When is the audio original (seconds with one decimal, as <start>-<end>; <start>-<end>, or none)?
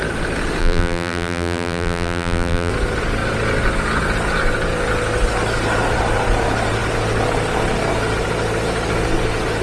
0.0-0.6; 2.7-9.6